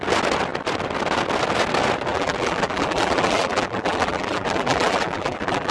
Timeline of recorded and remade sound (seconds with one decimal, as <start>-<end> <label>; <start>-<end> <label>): 0.0-2.1 recorded; 2.1-5.7 remade